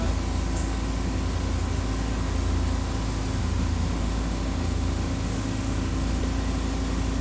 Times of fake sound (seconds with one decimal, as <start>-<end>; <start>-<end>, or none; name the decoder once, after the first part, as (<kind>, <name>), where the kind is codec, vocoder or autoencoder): 3.4-6.2 (autoencoder, DAC-VAE)